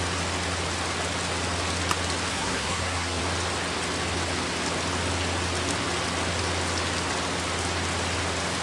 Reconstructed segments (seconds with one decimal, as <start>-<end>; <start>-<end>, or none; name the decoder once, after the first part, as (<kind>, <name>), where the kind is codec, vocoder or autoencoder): 2.3-3.2 (codec, SNAC)